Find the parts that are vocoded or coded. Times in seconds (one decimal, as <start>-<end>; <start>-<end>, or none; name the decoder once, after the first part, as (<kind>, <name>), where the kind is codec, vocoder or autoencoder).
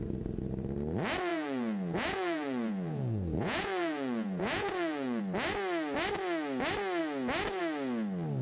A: 1.3-5.2 (vocoder, Vocos)